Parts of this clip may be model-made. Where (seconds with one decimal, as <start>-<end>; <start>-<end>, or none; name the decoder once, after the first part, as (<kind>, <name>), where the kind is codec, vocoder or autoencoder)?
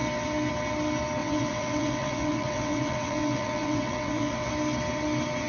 1.2-4.5 (vocoder, WaveNeXt)